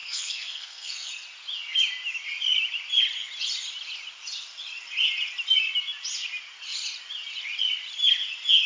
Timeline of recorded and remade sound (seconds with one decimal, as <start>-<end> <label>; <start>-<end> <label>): 0.0-1.1 remade; 1.1-8.7 recorded